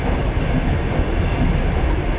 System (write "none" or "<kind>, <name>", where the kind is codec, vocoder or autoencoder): none